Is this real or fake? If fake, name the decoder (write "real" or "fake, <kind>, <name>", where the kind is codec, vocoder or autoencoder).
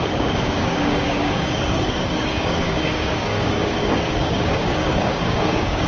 fake, codec, DAC